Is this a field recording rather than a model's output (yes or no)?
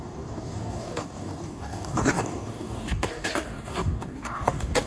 no